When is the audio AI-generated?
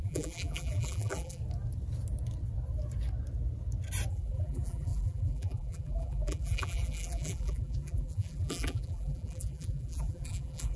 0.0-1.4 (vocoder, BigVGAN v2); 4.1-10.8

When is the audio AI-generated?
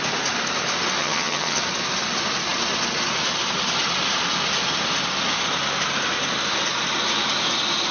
1.0-1.6 (vocoder, HiFi-GAN)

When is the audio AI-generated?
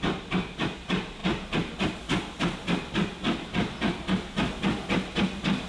none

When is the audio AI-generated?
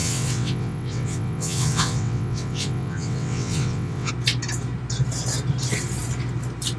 0.0-4.1 (vocoder, WaveNeXt)